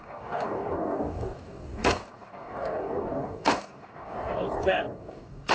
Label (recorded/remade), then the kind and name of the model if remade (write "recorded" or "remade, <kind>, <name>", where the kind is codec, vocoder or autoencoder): remade, codec, DAC